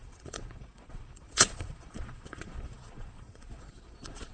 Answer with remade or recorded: remade